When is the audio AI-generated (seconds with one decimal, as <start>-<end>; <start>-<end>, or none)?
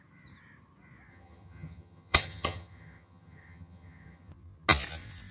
1.1-4.3